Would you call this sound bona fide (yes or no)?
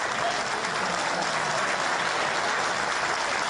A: yes